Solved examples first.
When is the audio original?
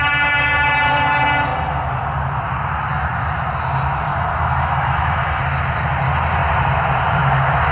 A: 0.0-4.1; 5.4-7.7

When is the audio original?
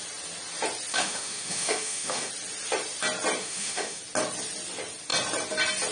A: 0.0-0.9; 2.3-3.4; 4.0-5.9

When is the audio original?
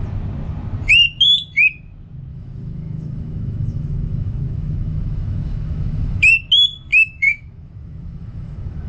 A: 0.0-2.3; 6.3-6.9